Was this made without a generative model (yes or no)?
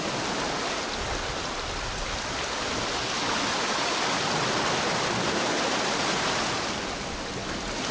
yes